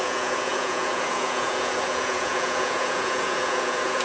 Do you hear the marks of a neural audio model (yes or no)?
yes